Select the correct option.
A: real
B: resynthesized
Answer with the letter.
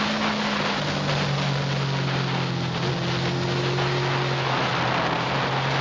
A